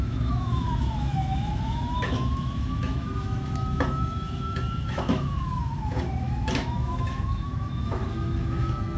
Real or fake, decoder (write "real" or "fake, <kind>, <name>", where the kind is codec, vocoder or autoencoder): fake, autoencoder, DAC-VAE